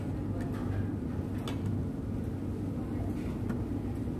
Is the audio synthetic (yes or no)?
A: no